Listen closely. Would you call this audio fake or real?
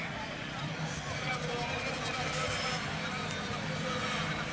fake